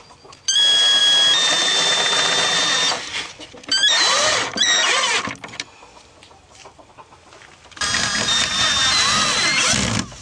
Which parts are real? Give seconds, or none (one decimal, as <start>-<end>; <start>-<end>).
0.0-10.2